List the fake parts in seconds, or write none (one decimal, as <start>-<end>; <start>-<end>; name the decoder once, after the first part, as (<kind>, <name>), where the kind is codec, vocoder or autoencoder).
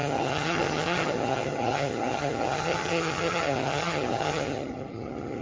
0.0-5.4 (vocoder, HiFi-GAN)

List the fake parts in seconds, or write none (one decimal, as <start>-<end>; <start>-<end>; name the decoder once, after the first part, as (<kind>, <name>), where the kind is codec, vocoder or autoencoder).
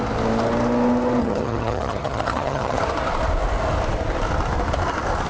1.2-2.8 (vocoder, HiFi-GAN)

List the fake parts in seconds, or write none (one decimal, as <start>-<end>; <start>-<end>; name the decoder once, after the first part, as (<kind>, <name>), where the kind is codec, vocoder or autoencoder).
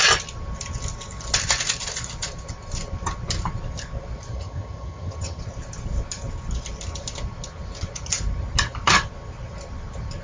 4.3-5.4 (vocoder, HiFi-GAN)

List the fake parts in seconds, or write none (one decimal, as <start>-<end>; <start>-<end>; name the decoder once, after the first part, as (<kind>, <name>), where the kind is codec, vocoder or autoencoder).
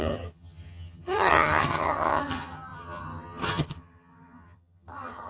0.0-5.3 (vocoder, HiFi-GAN)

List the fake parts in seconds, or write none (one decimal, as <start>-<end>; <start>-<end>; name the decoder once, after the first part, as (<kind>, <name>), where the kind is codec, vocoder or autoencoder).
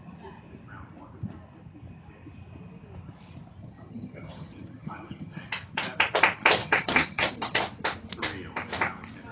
3.6-5.4 (vocoder, HiFi-GAN); 6.6-7.6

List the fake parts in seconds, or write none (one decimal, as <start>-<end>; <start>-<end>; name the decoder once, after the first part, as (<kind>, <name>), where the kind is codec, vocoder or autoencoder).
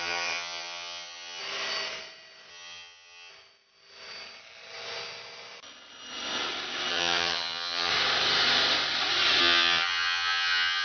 0.0-1.4 (vocoder, HiFi-GAN); 2.5-3.3; 6.9-7.9; 9.4-10.8